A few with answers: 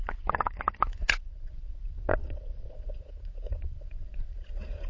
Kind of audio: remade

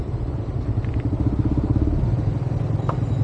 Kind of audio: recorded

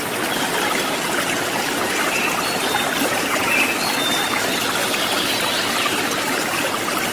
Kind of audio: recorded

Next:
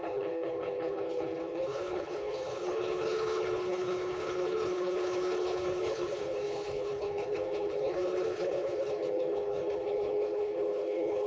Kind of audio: remade